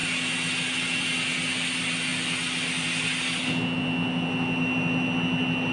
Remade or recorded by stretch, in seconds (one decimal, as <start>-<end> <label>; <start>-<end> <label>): 0.0-5.7 recorded

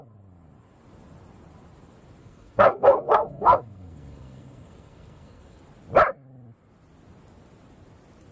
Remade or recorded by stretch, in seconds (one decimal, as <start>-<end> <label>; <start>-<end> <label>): 0.0-2.2 recorded; 2.2-5.6 remade; 5.6-8.3 recorded